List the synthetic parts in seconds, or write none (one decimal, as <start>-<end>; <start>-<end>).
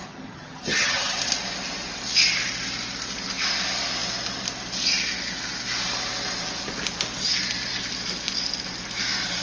0.0-1.2